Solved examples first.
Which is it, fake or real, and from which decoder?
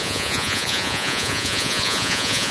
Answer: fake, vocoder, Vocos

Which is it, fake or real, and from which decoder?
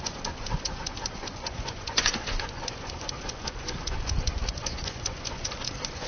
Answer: fake, vocoder, Vocos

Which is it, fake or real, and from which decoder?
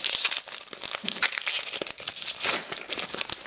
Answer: real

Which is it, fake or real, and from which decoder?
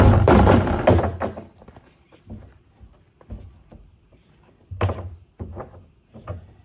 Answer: real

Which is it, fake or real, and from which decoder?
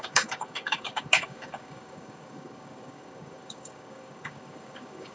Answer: fake, codec, DAC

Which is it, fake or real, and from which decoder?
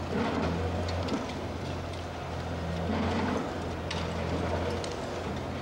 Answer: real